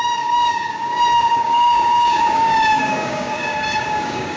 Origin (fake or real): fake